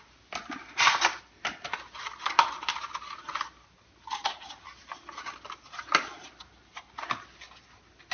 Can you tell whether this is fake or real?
real